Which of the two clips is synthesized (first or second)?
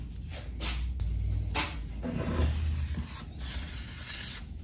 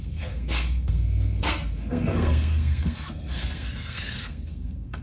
second